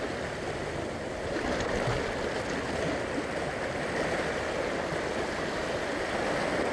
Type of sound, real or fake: real